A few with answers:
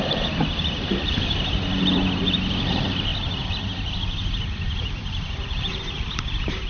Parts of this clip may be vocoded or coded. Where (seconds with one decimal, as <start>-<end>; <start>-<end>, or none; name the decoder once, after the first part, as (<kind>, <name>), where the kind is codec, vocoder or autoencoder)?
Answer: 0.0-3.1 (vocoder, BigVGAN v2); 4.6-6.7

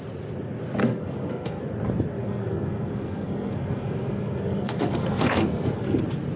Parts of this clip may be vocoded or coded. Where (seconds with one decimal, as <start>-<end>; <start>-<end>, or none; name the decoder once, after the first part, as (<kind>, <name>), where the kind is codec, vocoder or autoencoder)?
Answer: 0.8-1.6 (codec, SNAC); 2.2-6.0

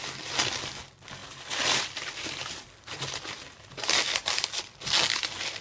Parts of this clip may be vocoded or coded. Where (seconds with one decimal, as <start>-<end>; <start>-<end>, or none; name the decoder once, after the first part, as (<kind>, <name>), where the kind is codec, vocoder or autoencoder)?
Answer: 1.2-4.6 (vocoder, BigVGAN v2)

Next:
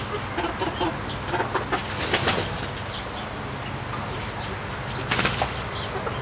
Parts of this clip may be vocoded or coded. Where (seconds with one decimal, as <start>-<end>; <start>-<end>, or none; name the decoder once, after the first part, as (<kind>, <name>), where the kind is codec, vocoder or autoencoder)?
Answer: none